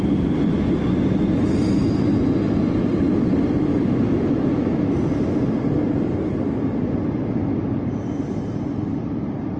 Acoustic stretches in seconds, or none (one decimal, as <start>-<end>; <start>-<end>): 0.0-3.7; 4.9-9.6